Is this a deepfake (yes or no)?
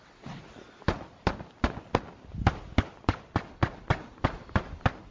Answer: no